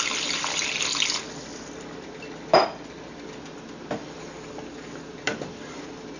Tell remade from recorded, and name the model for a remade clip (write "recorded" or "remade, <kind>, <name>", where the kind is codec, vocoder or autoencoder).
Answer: recorded